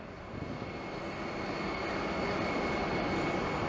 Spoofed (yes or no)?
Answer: no